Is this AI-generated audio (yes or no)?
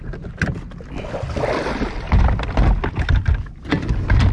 no